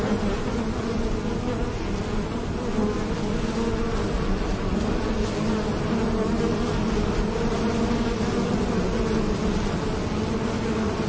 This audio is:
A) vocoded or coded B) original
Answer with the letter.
B